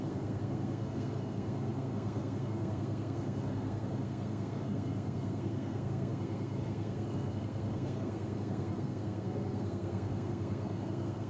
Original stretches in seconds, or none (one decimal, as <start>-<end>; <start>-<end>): none

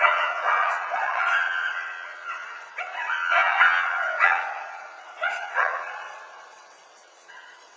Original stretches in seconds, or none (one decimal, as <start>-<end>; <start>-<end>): none

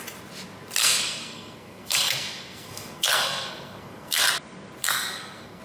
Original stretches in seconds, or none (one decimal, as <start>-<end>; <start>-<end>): 0.0-0.8; 4.2-4.8